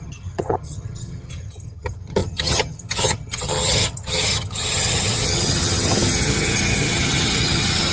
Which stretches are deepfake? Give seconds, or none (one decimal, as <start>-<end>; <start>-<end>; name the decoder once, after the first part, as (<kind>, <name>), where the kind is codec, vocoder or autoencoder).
0.0-7.9 (vocoder, HiFi-GAN)